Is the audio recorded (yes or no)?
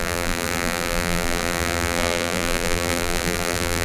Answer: no